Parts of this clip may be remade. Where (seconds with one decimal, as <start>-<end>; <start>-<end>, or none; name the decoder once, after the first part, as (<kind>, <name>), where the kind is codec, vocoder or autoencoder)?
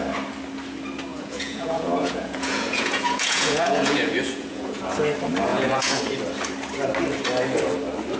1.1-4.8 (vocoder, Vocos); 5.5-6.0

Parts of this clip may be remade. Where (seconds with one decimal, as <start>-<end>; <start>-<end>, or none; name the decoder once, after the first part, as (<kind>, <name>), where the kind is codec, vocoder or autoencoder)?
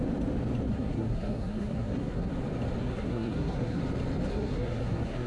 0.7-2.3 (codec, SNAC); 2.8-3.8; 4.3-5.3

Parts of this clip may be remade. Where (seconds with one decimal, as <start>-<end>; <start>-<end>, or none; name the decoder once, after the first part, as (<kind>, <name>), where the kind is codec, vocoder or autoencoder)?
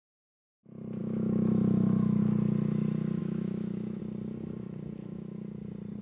1.0-2.2 (autoencoder, DAC-VAE); 3.2-4.0; 5.0-5.5